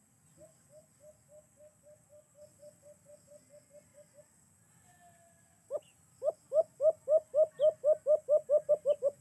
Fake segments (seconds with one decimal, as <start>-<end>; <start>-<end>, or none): none

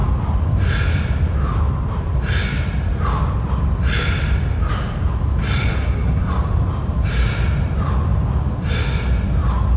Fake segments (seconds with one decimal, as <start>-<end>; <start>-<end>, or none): 5.7-6.3

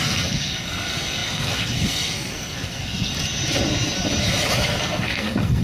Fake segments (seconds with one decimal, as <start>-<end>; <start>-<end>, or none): 0.0-3.1; 4.8-5.6

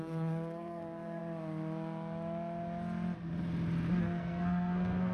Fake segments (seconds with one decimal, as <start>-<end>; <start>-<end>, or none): 0.0-1.2; 4.0-5.1

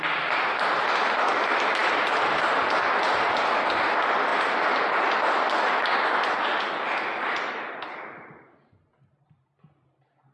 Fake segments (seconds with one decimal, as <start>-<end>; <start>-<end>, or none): none

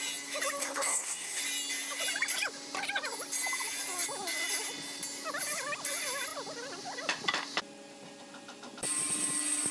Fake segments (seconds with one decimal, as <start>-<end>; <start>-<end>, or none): 0.6-1.4